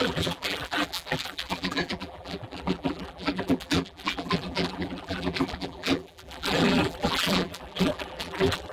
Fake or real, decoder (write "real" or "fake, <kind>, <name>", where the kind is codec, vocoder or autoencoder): fake, vocoder, BigVGAN v2